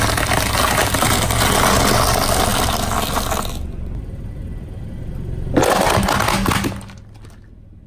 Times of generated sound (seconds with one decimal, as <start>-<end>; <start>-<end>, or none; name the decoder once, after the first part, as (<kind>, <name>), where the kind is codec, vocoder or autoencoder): none